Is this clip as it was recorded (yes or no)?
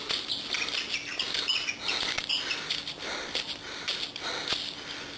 yes